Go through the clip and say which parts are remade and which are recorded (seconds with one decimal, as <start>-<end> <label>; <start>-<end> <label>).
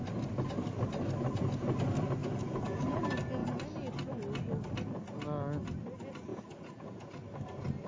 0.0-2.2 recorded; 2.2-3.0 remade; 3.0-6.3 recorded; 6.3-7.1 remade; 7.1-7.9 recorded